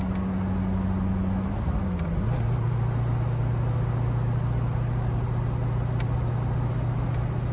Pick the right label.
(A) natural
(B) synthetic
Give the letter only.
A